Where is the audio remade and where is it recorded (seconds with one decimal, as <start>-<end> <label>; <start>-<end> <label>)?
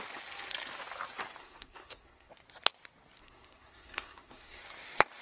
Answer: 0.0-1.4 recorded; 1.4-2.3 remade; 2.3-3.2 recorded; 3.2-4.6 remade; 4.6-5.2 recorded